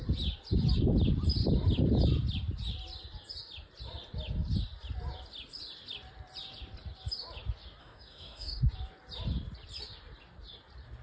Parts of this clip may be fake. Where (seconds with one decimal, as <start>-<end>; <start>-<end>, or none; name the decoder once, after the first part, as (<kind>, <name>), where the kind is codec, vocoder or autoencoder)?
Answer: 7.8-8.6 (codec, DAC)